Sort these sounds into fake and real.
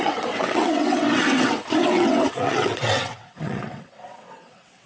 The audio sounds fake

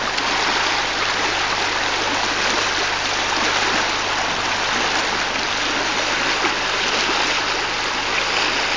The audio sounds real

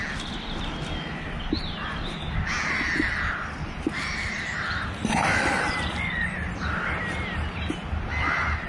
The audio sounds real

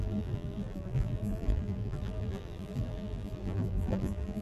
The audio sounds fake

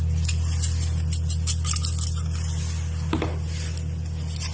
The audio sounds real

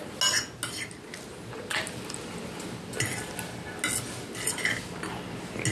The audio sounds real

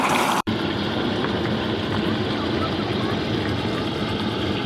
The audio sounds fake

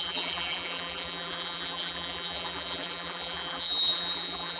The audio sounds fake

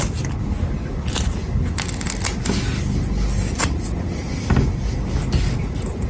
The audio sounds real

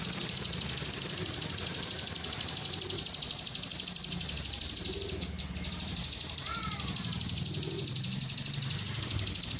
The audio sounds fake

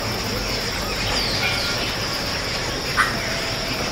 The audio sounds real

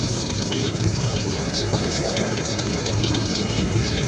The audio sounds fake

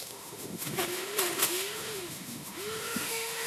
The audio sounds fake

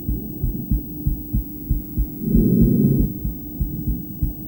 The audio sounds real